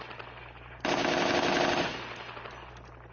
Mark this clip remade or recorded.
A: recorded